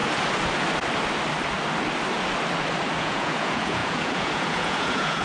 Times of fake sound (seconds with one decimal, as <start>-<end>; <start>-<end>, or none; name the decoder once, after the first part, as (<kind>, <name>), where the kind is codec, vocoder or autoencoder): 3.0-5.2 (vocoder, Vocos)